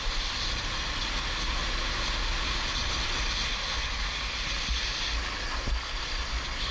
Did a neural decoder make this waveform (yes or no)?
no